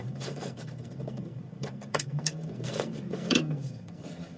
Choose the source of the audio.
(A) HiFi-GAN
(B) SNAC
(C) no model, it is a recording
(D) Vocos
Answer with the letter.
B